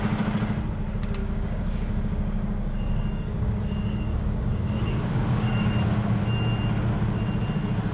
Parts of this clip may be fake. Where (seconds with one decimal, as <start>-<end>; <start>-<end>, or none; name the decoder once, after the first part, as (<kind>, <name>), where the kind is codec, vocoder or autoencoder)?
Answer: 1.2-5.7 (codec, DAC)